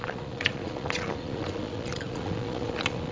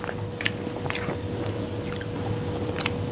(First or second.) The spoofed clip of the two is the first